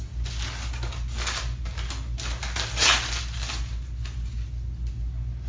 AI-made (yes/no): no